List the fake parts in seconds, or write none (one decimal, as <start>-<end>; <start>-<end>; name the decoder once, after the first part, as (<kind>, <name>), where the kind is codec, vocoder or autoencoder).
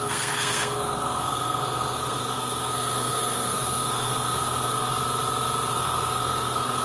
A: 0.0-4.9 (codec, SNAC); 5.7-6.8